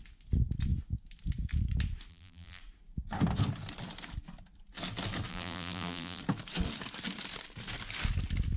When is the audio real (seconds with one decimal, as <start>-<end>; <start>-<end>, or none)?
0.0-2.1; 2.6-5.3; 6.2-8.6